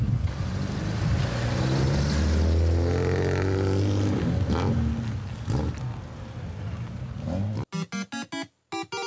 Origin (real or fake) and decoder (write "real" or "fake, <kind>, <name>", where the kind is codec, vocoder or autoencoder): real